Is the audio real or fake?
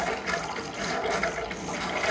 real